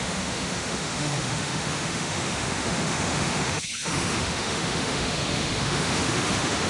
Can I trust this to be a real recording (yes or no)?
no